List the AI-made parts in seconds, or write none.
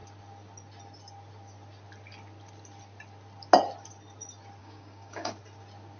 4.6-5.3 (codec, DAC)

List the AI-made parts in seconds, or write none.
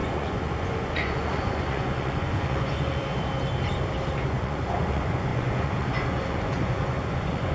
0.0-3.1 (vocoder, Vocos); 4.1-7.5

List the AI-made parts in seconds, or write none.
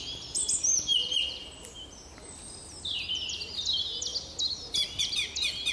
none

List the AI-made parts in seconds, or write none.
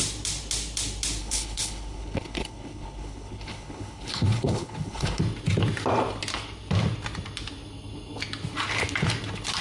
1.2-5.2 (codec, HILCodec)